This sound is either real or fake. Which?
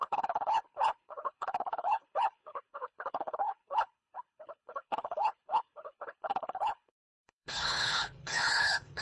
fake